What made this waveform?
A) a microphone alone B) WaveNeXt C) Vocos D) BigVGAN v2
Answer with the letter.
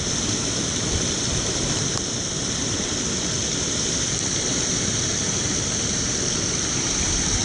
A